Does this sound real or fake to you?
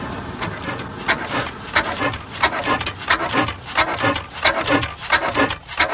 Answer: real